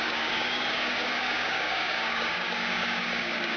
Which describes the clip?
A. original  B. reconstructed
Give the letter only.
B